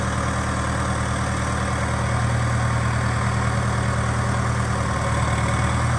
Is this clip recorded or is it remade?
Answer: recorded